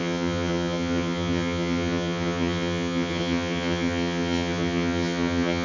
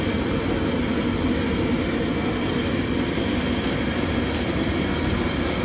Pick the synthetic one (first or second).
first